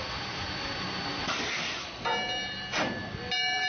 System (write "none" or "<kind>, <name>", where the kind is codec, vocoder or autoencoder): none